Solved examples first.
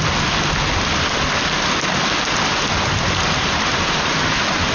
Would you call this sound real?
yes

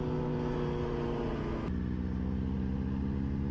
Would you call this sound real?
yes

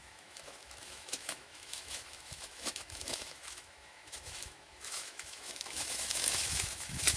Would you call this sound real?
no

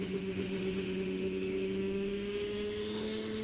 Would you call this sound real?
no